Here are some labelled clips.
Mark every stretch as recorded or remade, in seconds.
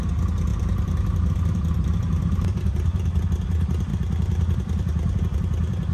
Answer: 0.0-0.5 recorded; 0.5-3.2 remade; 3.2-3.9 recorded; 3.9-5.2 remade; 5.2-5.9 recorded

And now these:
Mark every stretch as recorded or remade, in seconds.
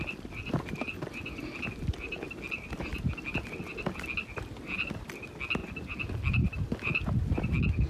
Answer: 0.0-7.9 recorded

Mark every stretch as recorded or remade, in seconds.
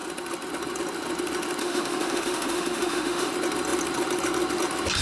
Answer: 0.0-1.6 recorded; 1.6-3.3 remade; 3.3-5.0 recorded